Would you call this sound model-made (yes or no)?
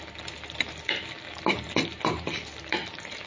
yes